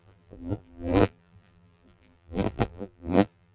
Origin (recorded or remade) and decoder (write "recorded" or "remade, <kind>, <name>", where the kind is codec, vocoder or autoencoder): remade, vocoder, BigVGAN v2